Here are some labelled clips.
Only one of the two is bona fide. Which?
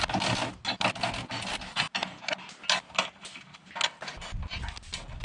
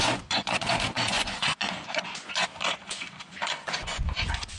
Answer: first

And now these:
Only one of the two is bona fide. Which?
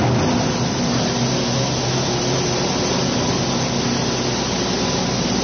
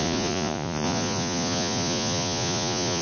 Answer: first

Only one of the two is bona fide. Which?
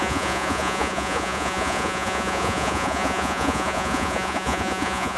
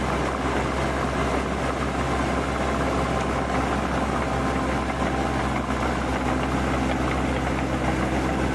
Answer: second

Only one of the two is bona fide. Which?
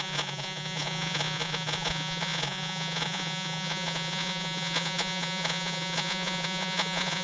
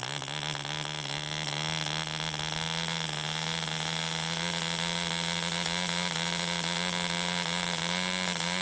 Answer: second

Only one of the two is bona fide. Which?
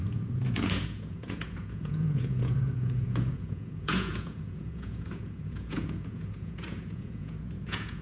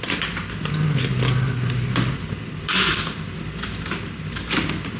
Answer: second